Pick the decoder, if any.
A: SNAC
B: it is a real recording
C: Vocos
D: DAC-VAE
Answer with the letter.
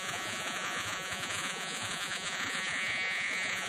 C